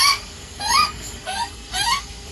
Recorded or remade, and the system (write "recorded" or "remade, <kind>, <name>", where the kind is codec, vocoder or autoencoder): remade, codec, SNAC